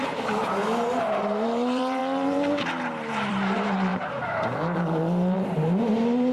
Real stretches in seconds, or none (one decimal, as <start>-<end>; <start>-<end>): 2.0-3.1